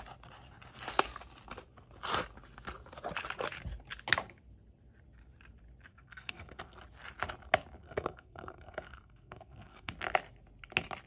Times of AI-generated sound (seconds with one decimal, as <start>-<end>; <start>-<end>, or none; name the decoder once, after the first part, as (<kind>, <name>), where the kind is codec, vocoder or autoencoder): 5.9-6.6 (codec, SNAC); 7.8-9.9